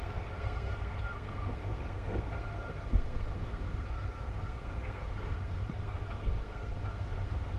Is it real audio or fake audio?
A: fake